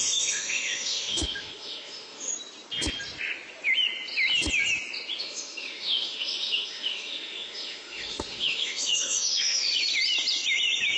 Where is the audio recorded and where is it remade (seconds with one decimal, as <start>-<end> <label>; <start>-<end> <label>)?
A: 0.0-2.3 remade; 2.3-5.2 recorded; 5.2-9.7 remade; 9.7-11.0 recorded